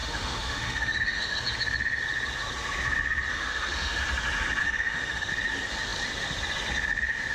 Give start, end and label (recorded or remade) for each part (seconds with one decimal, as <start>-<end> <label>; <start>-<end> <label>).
0.0-1.4 remade; 1.4-3.3 recorded; 3.3-4.0 remade; 4.0-4.6 recorded; 4.6-5.3 remade; 5.3-7.3 recorded